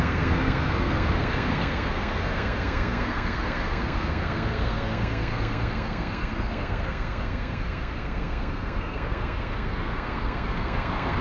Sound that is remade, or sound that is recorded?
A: remade